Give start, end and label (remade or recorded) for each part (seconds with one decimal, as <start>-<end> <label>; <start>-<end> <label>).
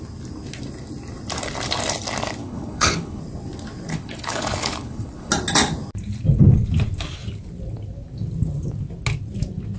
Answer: 0.0-2.4 recorded; 2.4-3.2 remade; 3.2-3.9 recorded; 3.9-5.3 remade; 5.3-9.8 recorded